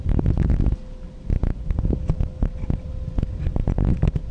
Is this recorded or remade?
recorded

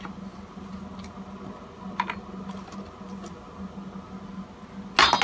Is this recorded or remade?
recorded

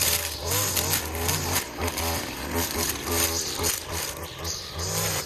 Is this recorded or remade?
recorded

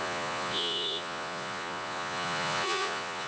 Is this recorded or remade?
remade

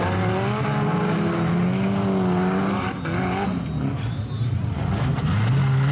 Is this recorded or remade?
recorded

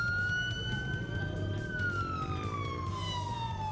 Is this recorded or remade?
recorded